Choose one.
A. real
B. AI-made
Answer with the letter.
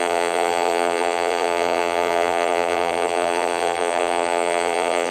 B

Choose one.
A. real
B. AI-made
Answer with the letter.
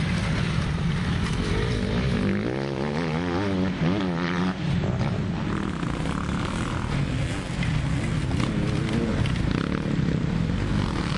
A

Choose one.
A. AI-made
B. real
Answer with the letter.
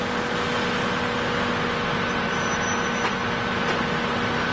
B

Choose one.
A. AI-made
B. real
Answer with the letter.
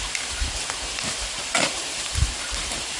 A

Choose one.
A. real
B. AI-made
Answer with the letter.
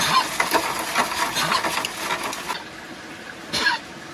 A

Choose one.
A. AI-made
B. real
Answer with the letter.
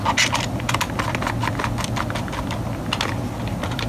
B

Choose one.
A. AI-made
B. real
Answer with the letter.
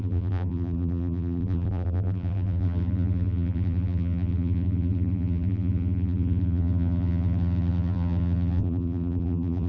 A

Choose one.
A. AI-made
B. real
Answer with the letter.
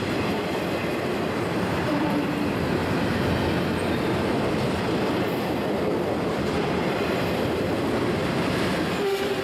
A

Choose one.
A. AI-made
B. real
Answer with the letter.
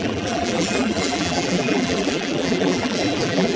A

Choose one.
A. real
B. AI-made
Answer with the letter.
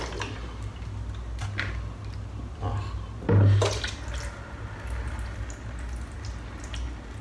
A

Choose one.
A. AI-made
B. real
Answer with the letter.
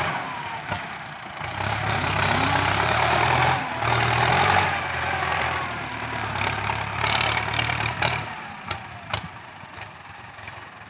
A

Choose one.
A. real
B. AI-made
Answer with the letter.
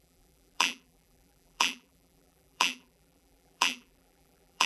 B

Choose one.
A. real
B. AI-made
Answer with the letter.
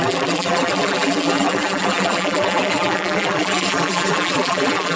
B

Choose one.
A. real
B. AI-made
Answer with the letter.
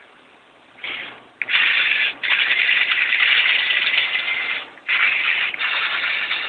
A